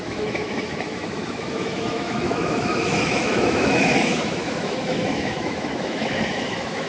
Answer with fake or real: fake